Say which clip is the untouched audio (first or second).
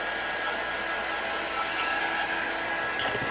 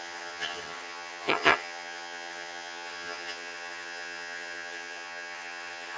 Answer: first